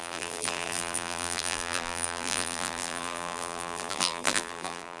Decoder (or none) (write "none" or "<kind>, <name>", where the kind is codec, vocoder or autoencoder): vocoder, BigVGAN v2